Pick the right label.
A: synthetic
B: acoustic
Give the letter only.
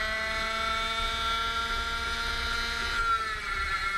B